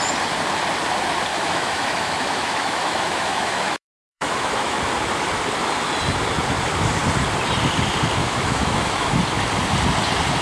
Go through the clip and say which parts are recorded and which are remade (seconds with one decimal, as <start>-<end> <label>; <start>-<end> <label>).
0.0-1.3 recorded; 1.3-4.9 remade; 4.9-8.2 recorded; 8.2-9.2 remade; 9.2-10.4 recorded